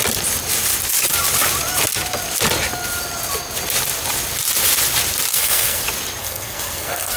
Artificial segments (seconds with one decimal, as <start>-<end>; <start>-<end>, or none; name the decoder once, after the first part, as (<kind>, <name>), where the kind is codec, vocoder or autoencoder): 5.3-5.8 (codec, SNAC); 6.2-7.2